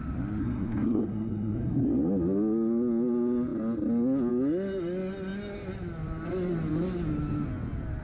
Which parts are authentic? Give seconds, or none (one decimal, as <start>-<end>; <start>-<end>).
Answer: 0.0-0.4; 1.9-8.0